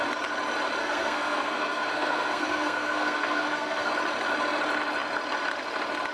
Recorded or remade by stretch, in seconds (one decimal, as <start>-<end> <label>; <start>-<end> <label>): 0.0-0.8 recorded; 0.8-3.9 remade; 3.9-6.1 recorded